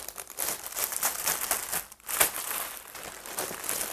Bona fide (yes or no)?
no